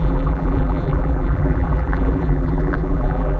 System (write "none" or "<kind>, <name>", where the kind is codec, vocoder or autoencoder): vocoder, BigVGAN v2